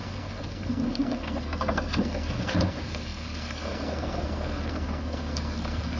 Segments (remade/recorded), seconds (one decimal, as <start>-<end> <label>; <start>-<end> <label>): 0.0-6.0 remade